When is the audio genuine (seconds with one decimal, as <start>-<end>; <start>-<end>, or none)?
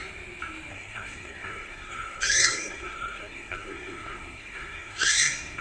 0.0-0.7